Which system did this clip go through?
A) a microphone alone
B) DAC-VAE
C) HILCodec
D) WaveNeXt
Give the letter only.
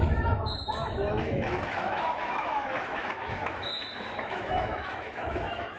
B